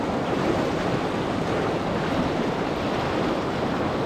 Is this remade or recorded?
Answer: recorded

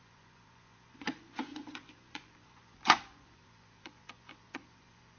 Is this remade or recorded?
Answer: remade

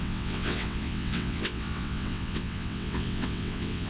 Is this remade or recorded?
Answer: remade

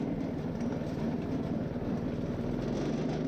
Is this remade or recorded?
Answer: recorded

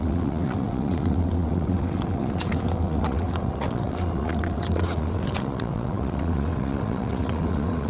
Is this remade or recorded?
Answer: remade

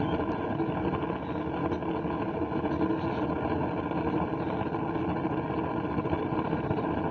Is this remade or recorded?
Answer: recorded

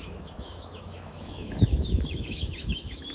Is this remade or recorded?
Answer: remade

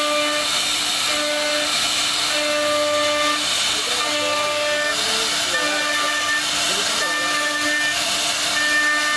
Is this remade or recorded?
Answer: recorded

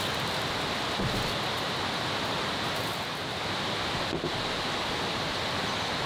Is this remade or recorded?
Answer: recorded